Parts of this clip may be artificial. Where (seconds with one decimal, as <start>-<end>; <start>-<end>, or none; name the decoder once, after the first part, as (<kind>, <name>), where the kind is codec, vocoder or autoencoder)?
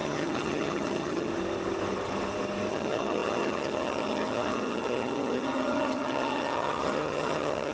0.0-1.3 (vocoder, HiFi-GAN); 2.7-7.7